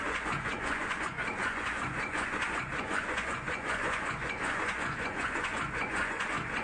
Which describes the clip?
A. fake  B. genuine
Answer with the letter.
A